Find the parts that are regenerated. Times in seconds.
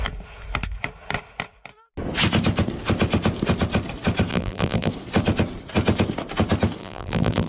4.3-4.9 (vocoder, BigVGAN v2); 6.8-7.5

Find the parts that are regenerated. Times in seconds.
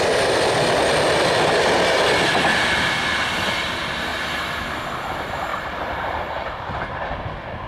5.5-6.8 (vocoder, BigVGAN v2)